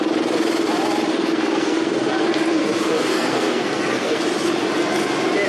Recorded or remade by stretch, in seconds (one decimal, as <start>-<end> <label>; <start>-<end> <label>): 0.0-1.1 recorded; 1.1-4.2 remade; 4.2-5.5 recorded